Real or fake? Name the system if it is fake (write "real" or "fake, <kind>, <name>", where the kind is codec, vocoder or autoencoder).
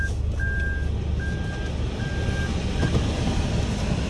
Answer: real